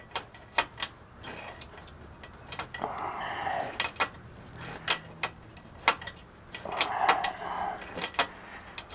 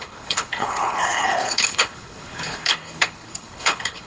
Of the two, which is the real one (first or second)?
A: first